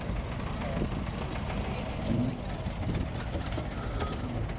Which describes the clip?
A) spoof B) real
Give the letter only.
B